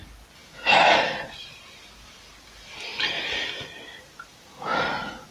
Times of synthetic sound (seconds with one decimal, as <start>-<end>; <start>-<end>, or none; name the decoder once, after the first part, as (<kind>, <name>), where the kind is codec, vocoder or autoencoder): none